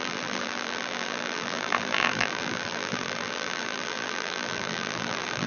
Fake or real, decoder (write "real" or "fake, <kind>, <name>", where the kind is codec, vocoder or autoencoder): fake, vocoder, BigVGAN v2